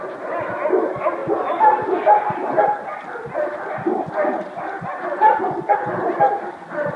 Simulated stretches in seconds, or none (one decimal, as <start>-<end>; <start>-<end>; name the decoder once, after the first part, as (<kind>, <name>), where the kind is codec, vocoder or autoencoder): none